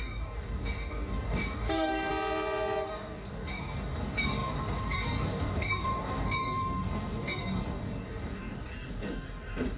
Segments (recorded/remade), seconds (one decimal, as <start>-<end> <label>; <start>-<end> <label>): 0.0-2.1 remade; 2.1-2.9 recorded; 2.9-9.8 remade